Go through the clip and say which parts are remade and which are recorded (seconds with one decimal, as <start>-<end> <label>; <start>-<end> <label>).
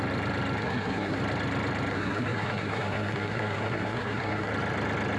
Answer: 0.0-0.6 recorded; 0.6-1.2 remade; 1.2-1.9 recorded; 1.9-4.5 remade; 4.5-5.2 recorded